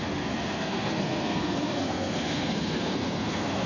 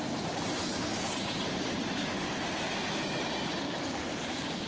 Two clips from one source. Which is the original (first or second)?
second